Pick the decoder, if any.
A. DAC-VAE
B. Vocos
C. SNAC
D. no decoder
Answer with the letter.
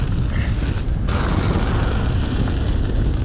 D